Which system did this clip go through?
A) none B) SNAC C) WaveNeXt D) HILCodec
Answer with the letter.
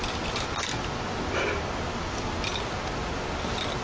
A